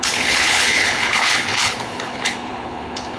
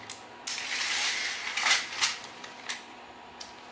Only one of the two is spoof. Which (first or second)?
first